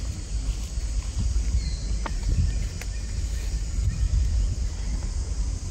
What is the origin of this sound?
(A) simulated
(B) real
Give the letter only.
B